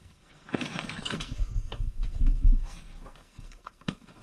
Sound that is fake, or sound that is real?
fake